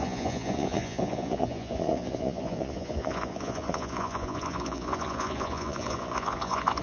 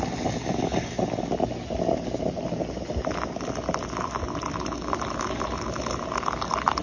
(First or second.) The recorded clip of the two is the second